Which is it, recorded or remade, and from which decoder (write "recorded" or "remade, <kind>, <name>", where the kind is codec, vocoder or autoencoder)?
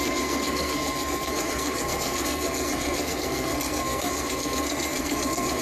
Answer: remade, codec, SNAC